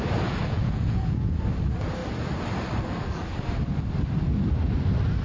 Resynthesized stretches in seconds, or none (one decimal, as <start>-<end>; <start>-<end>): 0.4-1.4